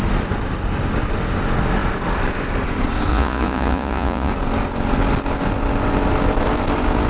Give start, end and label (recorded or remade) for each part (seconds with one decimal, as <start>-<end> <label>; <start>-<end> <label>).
0.0-3.1 recorded; 3.1-4.3 remade; 4.3-7.1 recorded